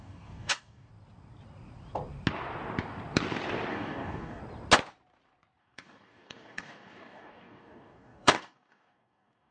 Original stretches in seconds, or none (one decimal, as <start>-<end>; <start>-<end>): 0.9-3.7; 4.4-5.6